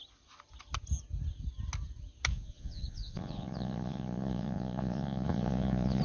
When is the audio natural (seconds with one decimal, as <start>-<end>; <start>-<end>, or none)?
0.0-2.3